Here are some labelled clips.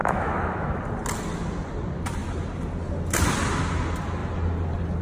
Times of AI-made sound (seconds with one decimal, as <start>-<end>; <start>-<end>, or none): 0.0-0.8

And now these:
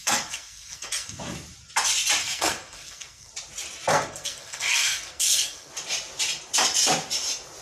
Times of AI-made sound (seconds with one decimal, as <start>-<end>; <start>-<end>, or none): 0.0-1.2; 2.2-3.3; 3.9-5.7

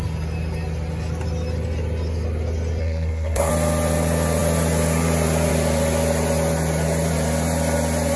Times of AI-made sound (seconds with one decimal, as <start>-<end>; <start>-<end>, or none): 2.8-3.5